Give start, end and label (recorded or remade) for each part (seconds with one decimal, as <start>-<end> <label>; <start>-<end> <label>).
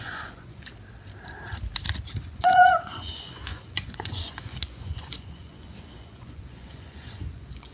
0.0-0.7 remade; 0.7-2.2 recorded; 2.2-7.7 remade